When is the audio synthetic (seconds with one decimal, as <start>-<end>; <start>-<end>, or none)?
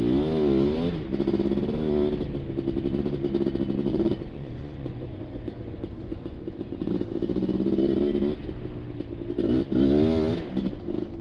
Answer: 3.9-6.9